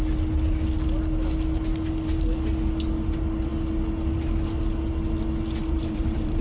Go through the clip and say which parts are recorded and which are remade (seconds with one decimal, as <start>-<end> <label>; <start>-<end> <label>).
0.0-5.6 recorded; 5.6-6.4 remade